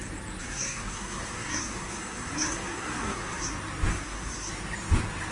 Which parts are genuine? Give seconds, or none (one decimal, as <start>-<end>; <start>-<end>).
0.0-0.4; 3.5-3.9; 4.5-5.3